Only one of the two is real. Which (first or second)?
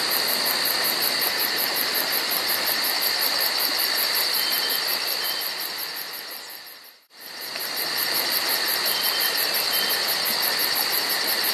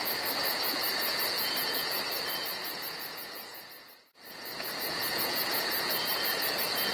first